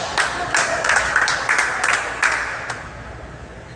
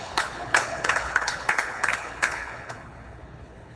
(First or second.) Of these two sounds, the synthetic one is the second